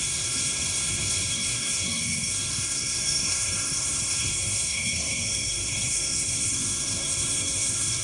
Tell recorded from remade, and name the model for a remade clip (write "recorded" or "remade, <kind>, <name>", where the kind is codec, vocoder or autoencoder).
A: remade, codec, SNAC